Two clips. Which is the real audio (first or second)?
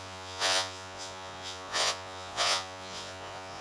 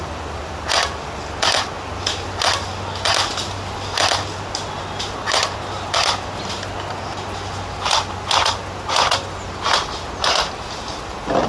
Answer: second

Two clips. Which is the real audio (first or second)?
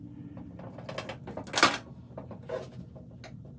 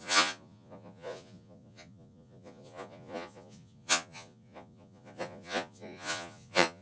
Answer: first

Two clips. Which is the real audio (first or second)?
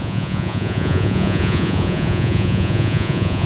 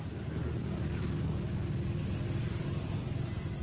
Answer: second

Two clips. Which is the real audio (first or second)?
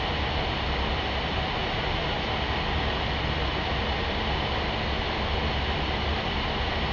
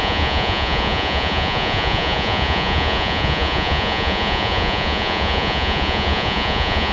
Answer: first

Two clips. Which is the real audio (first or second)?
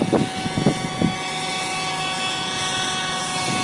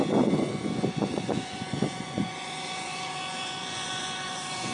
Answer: first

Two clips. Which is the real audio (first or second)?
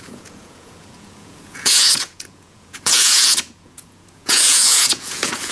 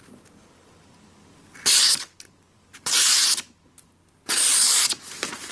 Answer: second